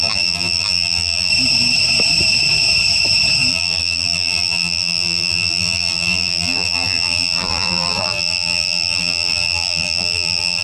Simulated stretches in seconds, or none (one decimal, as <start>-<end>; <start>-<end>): 0.0-1.3; 3.5-10.6